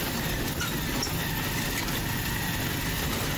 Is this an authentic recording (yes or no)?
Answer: no